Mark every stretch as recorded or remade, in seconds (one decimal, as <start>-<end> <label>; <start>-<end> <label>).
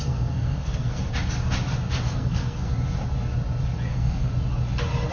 0.0-1.1 remade; 1.1-2.0 recorded; 2.0-2.7 remade; 2.7-3.9 recorded; 3.9-4.3 remade; 4.3-5.1 recorded